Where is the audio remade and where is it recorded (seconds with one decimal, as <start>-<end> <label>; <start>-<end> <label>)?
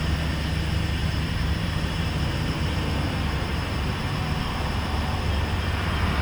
0.0-1.0 recorded; 1.0-2.8 remade; 2.8-3.5 recorded; 3.5-4.0 remade; 4.0-6.2 recorded